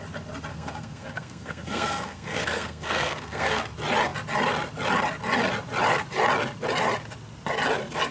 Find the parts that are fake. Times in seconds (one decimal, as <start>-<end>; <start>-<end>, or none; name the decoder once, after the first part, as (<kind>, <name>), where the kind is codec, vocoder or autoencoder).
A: 0.5-3.6 (codec, SNAC)